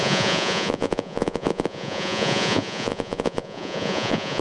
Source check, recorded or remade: remade